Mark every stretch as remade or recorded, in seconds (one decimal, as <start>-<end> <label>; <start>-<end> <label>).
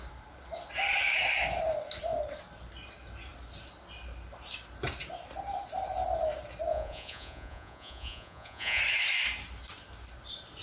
0.0-6.7 recorded; 6.7-8.8 remade; 8.8-10.6 recorded